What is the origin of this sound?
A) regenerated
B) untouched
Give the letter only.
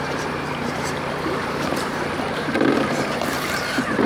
A